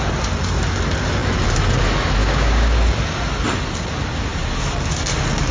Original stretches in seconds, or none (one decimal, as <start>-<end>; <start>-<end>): 0.0-2.2; 2.9-5.5